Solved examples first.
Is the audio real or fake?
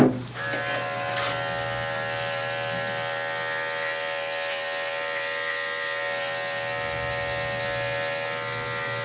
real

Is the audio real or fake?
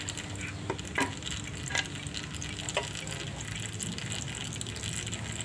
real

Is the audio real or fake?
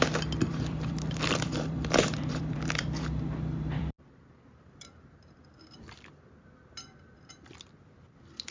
fake